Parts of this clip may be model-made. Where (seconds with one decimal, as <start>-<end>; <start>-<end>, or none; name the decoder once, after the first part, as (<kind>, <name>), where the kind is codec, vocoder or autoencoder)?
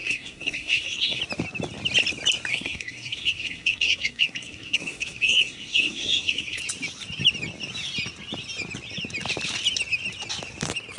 0.0-1.2 (codec, SNAC); 2.5-6.6